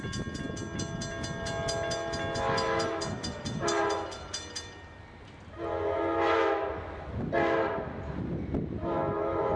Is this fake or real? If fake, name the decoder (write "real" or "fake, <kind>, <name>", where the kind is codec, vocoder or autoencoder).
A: real